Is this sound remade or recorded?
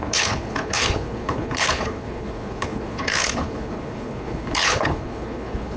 remade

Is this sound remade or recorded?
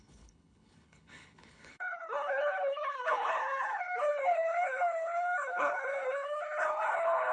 remade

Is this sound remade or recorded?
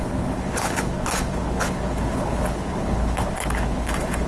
remade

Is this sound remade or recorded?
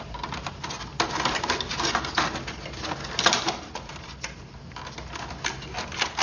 recorded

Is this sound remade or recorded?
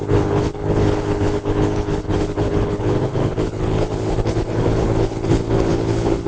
remade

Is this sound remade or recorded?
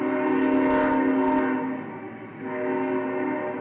recorded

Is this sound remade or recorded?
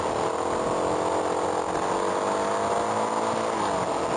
recorded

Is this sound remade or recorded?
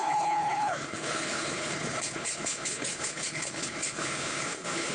remade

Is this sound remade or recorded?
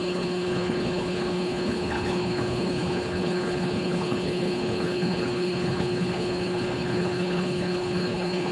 remade